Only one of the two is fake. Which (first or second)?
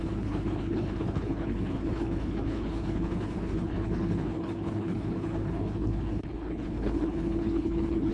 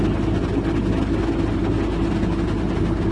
first